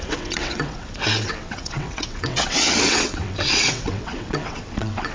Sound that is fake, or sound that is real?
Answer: fake